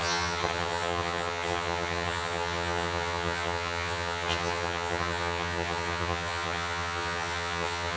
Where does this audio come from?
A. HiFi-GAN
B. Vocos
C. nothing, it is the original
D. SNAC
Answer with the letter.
A